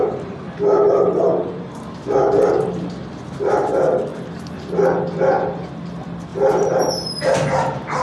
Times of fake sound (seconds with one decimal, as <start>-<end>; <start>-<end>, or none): 4.1-5.0; 6.3-6.9